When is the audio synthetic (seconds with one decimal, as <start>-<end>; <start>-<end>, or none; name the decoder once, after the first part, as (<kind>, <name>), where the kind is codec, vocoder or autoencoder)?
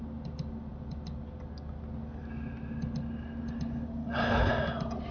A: 4.0-4.5 (codec, HILCodec)